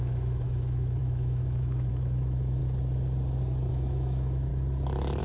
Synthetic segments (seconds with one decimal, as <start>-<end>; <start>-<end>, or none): 0.0-2.6; 3.7-4.5